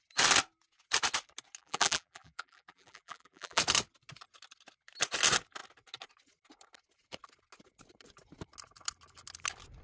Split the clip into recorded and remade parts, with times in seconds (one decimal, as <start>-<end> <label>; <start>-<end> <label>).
0.0-1.6 recorded; 1.6-3.6 remade; 3.6-9.8 recorded